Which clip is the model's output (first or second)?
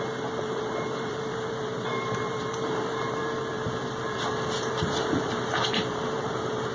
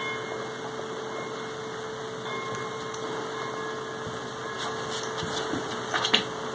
first